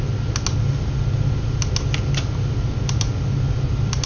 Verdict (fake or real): real